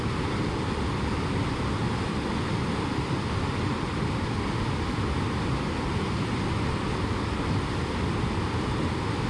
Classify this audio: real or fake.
real